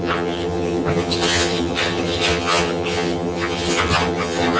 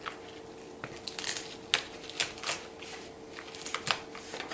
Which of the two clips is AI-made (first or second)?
first